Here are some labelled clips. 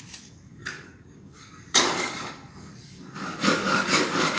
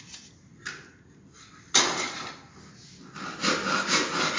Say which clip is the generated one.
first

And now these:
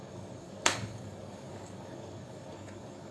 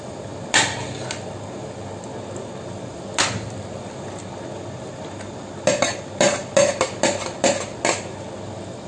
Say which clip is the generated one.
first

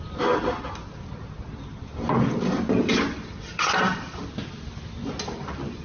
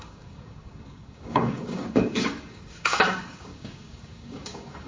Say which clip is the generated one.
second